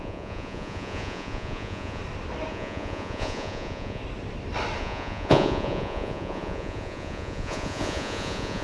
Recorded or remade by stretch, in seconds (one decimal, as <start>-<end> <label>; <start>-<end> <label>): 0.0-2.0 remade; 2.0-2.5 recorded; 2.5-4.0 remade; 4.0-4.8 recorded; 4.8-8.6 remade